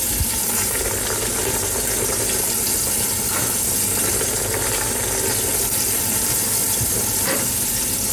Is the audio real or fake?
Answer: real